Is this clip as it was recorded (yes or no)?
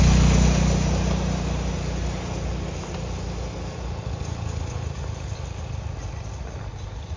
yes